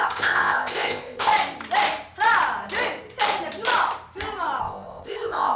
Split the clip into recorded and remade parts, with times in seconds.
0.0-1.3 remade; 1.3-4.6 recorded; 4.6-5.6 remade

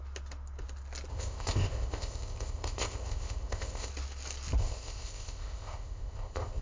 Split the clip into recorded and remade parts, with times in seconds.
0.0-1.1 recorded; 1.1-3.9 remade; 3.9-4.6 recorded; 4.6-6.6 remade

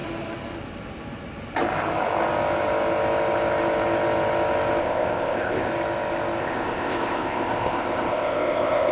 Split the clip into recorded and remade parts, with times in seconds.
0.0-4.8 recorded; 4.8-5.7 remade; 5.7-6.4 recorded; 6.4-8.9 remade

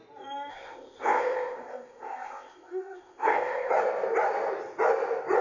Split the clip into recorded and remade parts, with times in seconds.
0.0-0.5 recorded; 0.5-3.7 remade; 3.7-5.4 recorded

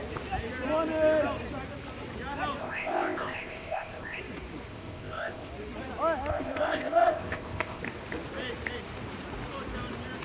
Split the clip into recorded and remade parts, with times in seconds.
0.0-2.6 recorded; 2.6-4.2 remade; 4.2-4.7 recorded; 4.7-5.5 remade; 5.5-6.3 recorded; 6.3-7.8 remade; 7.8-10.2 recorded

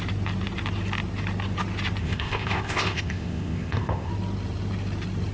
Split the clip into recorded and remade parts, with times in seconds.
0.0-2.0 recorded; 2.0-4.1 remade; 4.1-5.3 recorded

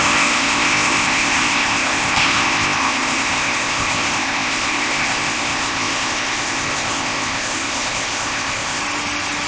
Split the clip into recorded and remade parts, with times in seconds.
0.0-8.8 remade; 8.8-9.5 recorded